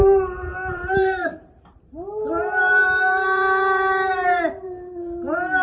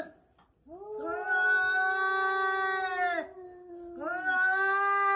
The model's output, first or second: first